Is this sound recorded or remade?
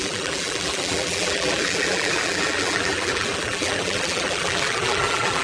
remade